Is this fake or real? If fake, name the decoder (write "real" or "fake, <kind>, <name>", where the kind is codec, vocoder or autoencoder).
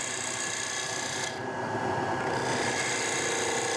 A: real